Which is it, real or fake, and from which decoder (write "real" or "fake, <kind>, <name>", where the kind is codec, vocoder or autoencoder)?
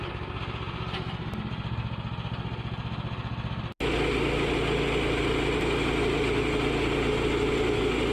real